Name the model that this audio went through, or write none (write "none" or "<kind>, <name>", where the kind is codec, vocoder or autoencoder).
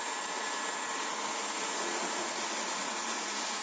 vocoder, Vocos